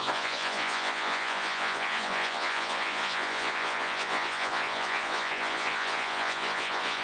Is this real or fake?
fake